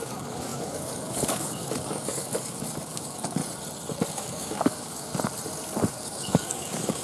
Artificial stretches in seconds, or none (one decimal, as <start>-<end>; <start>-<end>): 0.0-3.4; 4.1-5.1; 5.9-7.0